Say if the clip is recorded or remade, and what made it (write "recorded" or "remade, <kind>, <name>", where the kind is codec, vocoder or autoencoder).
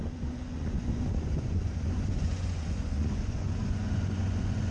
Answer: remade, vocoder, Vocos